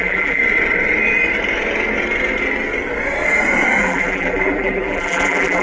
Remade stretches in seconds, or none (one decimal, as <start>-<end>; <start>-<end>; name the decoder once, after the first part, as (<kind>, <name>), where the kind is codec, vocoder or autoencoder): 0.0-0.4 (vocoder, BigVGAN v2); 3.8-5.6